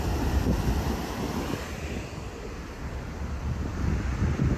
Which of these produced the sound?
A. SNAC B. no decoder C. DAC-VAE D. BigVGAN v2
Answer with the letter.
B